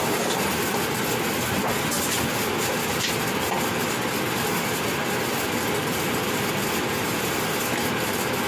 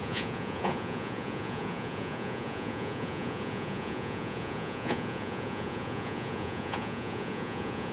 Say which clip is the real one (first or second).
first